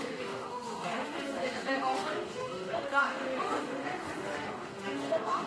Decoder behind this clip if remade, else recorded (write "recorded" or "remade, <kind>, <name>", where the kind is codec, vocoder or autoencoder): remade, autoencoder, DAC-VAE